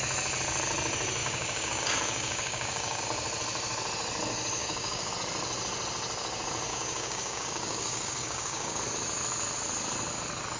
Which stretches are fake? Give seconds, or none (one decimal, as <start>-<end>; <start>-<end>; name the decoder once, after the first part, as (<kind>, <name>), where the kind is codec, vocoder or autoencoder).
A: 1.2-3.0 (codec, DAC); 4.6-5.1; 6.7-8.8